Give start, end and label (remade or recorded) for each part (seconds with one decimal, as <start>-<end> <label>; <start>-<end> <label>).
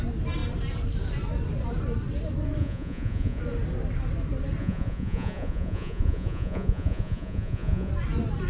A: 0.0-2.6 recorded; 2.6-3.4 remade; 3.4-4.6 recorded; 4.6-7.9 remade; 7.9-8.5 recorded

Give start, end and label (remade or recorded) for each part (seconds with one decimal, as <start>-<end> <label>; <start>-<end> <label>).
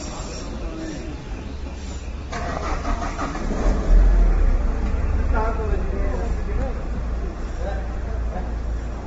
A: 0.0-9.1 recorded